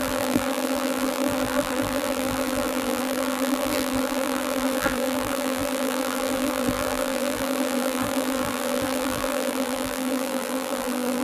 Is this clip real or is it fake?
fake